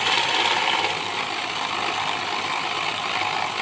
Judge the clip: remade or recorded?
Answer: recorded